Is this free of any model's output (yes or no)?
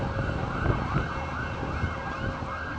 yes